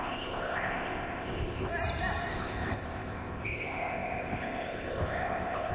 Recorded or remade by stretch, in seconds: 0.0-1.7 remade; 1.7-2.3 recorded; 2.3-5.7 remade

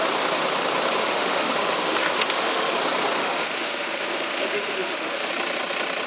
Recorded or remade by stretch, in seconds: 0.0-1.0 recorded; 1.0-2.7 remade; 2.7-3.2 recorded; 3.2-5.3 remade; 5.3-6.1 recorded

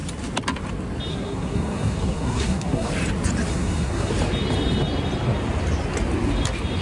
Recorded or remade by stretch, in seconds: 0.0-1.1 recorded; 1.1-2.9 remade; 2.9-3.5 recorded; 3.5-4.1 remade; 4.1-6.8 recorded

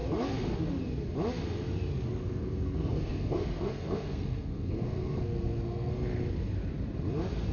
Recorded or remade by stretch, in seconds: 0.0-2.2 recorded; 2.2-5.9 remade; 5.9-7.5 recorded

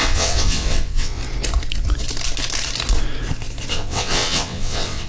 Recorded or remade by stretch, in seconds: 0.0-1.2 remade; 1.2-3.7 recorded; 3.7-5.1 remade

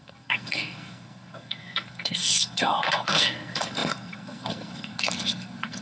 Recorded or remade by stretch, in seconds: 0.0-5.8 remade